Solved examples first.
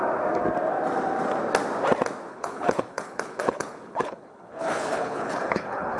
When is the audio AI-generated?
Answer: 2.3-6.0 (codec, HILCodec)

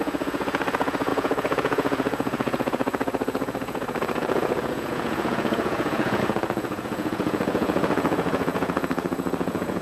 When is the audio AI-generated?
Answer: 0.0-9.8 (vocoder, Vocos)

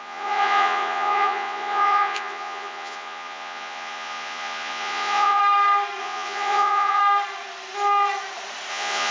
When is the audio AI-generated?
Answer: 0.0-5.4 (vocoder, Vocos); 6.0-7.0; 8.7-9.1

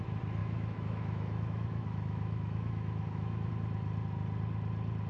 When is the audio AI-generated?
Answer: 0.4-3.5 (autoencoder, DAC-VAE)